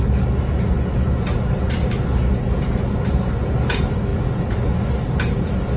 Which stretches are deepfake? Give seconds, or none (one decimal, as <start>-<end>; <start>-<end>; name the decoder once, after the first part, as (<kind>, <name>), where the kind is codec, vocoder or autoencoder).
none